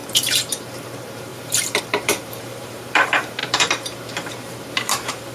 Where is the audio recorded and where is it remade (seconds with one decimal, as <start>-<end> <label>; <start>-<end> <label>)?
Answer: 0.0-5.3 remade